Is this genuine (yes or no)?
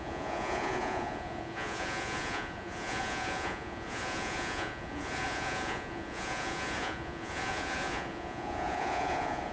no